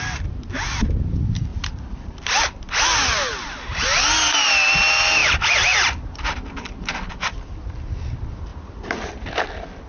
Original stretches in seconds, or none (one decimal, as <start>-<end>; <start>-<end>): 0.0-1.5; 2.4-5.2; 6.2-8.5; 9.3-9.9